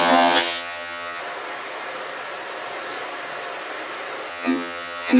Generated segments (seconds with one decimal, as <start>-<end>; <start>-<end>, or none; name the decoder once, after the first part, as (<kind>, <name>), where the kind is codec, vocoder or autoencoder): 0.0-1.2 (vocoder, HiFi-GAN); 4.3-5.2